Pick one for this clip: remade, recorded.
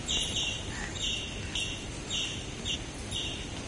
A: recorded